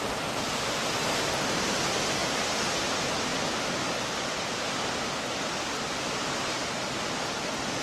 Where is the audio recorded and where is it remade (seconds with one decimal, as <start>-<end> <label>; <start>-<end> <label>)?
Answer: 0.0-7.8 recorded